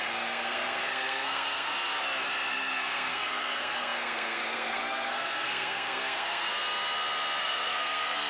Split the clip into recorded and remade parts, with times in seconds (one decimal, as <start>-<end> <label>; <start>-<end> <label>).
0.0-1.7 remade; 1.7-2.5 recorded; 2.5-6.5 remade; 6.5-7.4 recorded; 7.4-8.3 remade